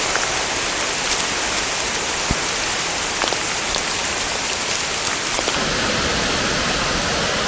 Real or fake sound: real